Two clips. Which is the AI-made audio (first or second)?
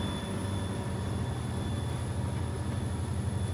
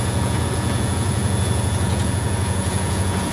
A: second